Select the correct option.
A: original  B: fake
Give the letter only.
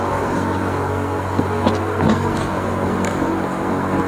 B